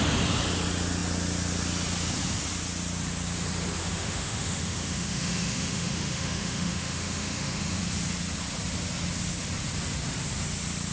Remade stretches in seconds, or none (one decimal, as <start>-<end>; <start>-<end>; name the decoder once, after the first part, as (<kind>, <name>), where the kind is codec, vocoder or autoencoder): 3.8-7.8 (autoencoder, DAC-VAE)